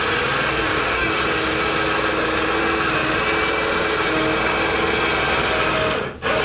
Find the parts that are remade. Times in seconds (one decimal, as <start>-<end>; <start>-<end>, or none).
0.5-1.1